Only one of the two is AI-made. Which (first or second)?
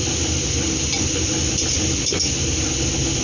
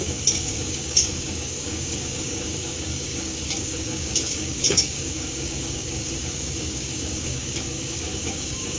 second